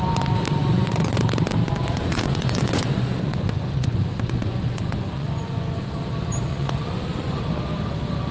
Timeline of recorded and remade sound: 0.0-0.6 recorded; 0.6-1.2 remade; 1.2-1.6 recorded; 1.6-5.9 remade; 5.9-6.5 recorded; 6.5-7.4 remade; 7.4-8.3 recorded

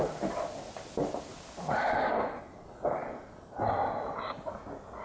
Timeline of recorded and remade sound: 0.0-5.0 recorded

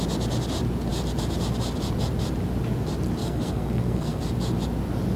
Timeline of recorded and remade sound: 0.0-3.2 recorded; 3.2-4.2 remade; 4.2-5.2 recorded